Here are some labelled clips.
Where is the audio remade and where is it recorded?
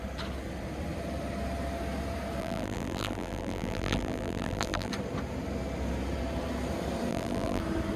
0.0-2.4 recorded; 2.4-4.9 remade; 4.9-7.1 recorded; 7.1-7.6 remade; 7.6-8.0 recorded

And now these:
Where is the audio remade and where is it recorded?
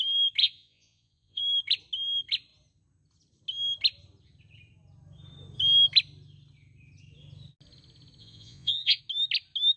0.0-0.4 recorded; 0.4-1.4 remade; 1.4-8.2 recorded; 8.2-9.0 remade; 9.0-9.8 recorded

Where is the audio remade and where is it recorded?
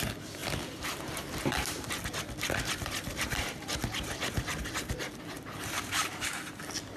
0.0-0.4 recorded; 0.4-1.9 remade; 1.9-4.6 recorded; 4.6-6.6 remade; 6.6-7.0 recorded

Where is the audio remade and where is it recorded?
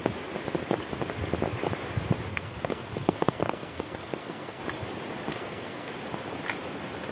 0.0-2.3 recorded; 2.3-4.6 remade; 4.6-5.3 recorded; 5.3-5.9 remade; 5.9-7.1 recorded